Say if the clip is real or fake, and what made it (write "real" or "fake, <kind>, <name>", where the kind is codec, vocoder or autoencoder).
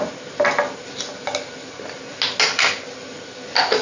real